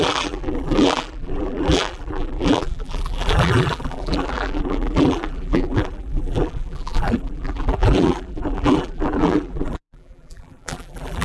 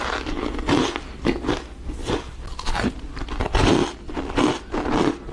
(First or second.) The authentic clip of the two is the second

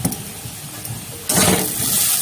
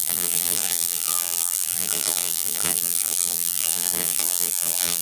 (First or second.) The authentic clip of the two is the first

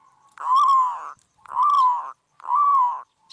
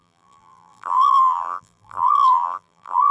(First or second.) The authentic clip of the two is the first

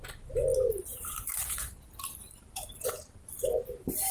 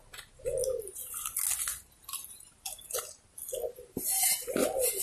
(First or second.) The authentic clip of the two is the second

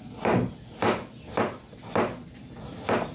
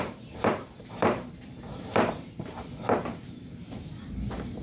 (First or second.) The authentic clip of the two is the first